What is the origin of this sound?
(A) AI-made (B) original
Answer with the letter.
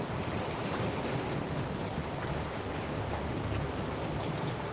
B